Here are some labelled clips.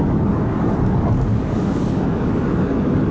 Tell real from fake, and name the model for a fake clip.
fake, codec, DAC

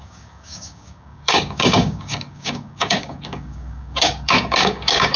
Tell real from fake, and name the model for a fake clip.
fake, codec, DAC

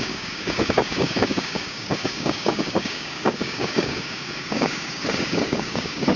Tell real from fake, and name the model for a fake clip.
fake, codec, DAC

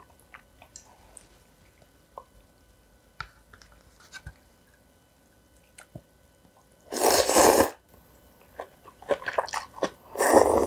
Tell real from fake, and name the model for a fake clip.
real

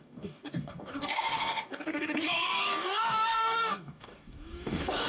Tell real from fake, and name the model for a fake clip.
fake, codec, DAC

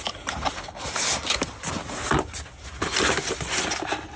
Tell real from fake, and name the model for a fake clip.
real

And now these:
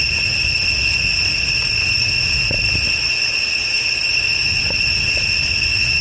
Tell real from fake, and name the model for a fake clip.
real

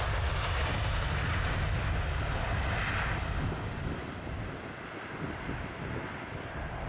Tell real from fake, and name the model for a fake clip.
real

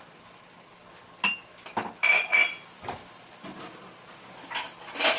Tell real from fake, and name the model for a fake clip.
real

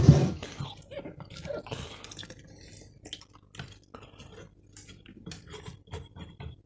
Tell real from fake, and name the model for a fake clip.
real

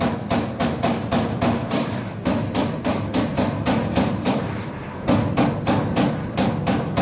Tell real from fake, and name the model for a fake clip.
real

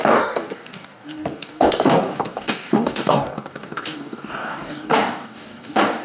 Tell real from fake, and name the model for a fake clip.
fake, codec, DAC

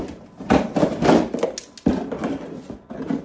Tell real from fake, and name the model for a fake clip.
real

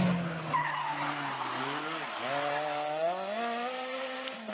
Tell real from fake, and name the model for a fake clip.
real